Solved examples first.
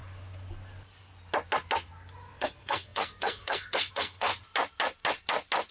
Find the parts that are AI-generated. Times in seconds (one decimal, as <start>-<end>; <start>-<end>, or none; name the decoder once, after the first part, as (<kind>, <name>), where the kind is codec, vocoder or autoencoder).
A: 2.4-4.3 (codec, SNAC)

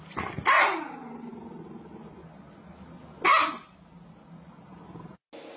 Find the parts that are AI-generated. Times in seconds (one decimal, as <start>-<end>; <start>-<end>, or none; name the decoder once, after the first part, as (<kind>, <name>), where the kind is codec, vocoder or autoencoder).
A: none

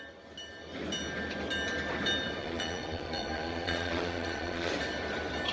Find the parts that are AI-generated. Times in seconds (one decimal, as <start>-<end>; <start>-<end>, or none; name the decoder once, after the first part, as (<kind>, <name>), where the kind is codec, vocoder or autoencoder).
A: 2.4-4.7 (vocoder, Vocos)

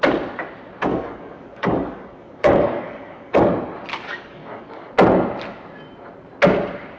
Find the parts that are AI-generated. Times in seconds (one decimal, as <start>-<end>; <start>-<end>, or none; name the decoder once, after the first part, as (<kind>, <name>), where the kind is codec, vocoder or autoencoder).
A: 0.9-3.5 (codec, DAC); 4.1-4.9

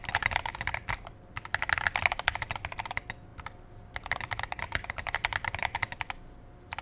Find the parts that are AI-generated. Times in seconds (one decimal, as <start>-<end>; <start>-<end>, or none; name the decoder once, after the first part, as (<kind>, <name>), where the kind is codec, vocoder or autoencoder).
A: none

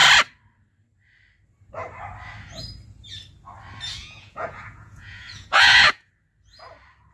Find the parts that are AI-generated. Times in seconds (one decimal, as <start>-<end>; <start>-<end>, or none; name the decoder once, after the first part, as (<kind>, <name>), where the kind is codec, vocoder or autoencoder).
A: 4.0-6.1 (vocoder, Vocos)

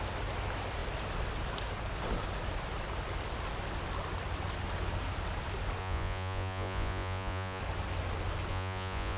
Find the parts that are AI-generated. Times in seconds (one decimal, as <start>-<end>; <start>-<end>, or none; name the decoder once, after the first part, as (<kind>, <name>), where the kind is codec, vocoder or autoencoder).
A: 5.8-7.6 (vocoder, Vocos); 8.5-9.2

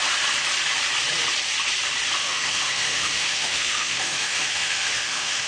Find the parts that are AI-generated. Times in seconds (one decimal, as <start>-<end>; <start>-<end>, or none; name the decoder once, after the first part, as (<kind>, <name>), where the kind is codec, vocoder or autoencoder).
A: 2.2-5.5 (autoencoder, DAC-VAE)